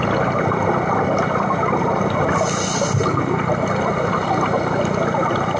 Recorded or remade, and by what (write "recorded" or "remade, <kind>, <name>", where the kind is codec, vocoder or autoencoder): recorded